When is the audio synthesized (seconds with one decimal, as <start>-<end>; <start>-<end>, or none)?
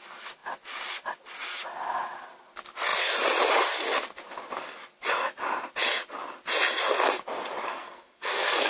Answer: 7.8-8.7